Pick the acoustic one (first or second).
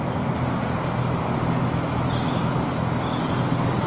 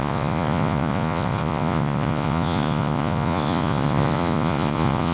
first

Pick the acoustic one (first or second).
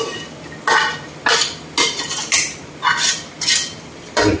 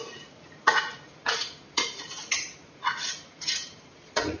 first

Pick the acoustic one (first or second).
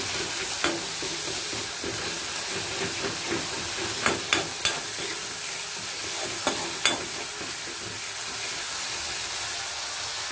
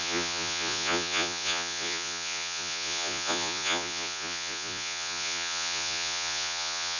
first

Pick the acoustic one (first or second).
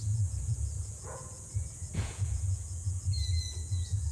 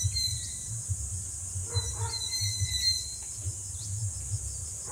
second